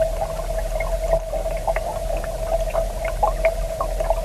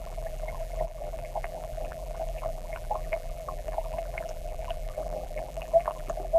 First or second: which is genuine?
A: first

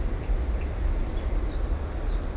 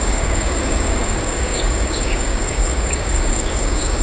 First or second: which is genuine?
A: first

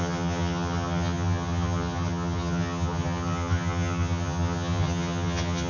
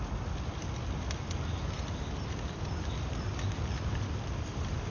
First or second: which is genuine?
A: second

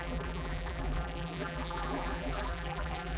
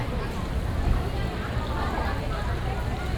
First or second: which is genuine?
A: second